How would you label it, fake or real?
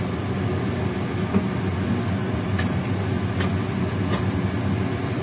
real